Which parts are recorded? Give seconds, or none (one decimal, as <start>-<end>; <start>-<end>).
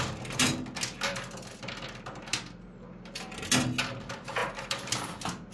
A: 0.0-4.4; 5.1-5.5